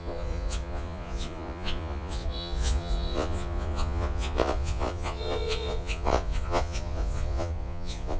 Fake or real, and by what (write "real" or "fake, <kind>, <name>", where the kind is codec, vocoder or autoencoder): fake, vocoder, Vocos